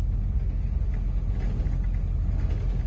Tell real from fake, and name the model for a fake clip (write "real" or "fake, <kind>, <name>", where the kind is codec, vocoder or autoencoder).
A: real